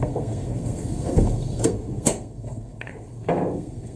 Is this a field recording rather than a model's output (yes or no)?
no